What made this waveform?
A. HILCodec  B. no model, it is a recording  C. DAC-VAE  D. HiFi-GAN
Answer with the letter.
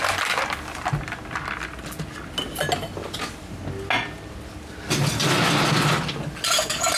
B